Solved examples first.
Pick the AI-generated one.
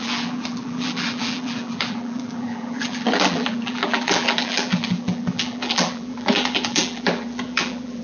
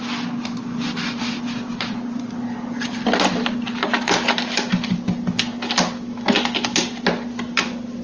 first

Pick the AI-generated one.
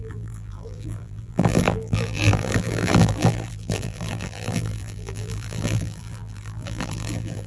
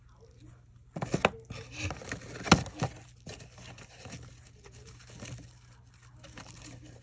first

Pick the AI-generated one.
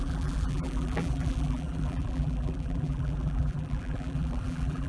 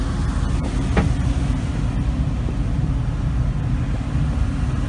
first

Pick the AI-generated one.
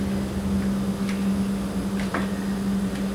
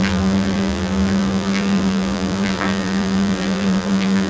second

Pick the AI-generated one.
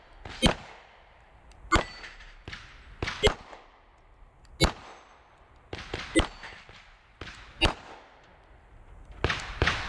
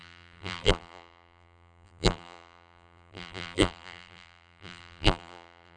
second